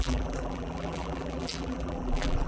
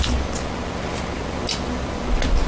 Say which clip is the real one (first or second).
second